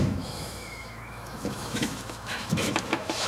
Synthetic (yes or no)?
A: yes